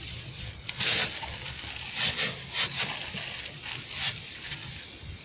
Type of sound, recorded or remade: recorded